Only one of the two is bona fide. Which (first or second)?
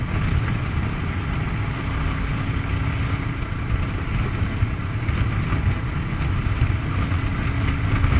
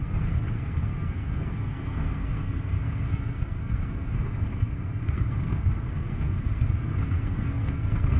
first